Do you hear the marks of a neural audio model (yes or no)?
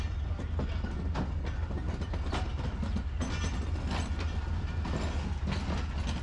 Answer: no